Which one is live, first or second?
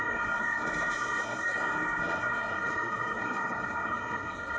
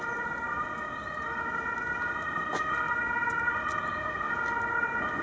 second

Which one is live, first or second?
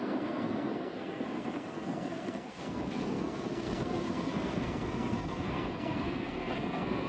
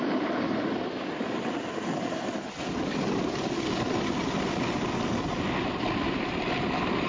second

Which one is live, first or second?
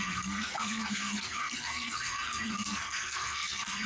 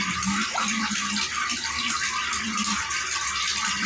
second